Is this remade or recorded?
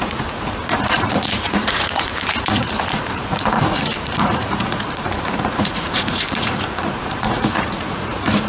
remade